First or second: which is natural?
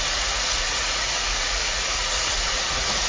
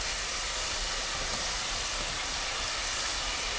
second